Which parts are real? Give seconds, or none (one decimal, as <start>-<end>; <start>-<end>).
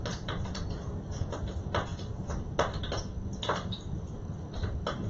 0.0-5.1